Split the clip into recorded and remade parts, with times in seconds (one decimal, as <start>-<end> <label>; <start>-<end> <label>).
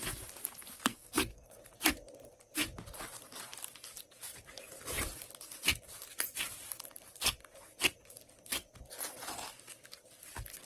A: 0.0-0.9 recorded; 0.9-1.6 remade; 1.6-10.7 recorded